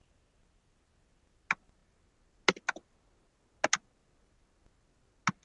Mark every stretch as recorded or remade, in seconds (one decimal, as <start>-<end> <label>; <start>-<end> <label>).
0.0-5.4 recorded